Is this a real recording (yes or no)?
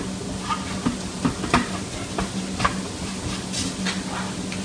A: yes